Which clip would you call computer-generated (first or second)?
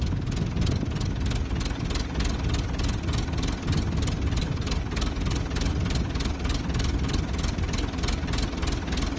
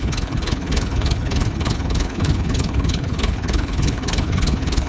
second